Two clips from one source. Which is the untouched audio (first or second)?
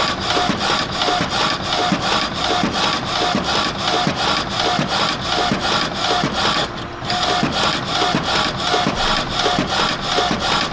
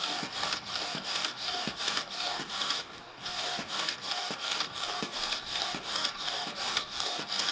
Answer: first